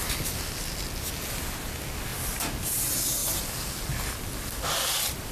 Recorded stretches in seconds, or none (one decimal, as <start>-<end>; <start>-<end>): 0.0-5.3